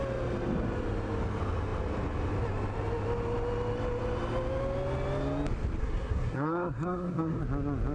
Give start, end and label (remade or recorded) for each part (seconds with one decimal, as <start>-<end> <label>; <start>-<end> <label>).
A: 0.0-5.8 recorded; 5.8-7.4 remade; 7.4-7.9 recorded